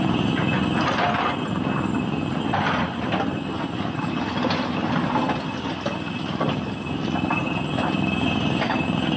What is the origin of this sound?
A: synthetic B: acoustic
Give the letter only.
B